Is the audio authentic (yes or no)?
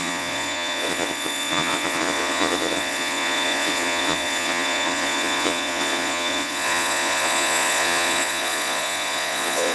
no